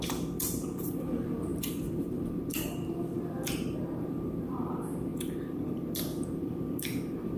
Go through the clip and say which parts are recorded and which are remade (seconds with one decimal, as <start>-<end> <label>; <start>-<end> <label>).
0.0-7.4 remade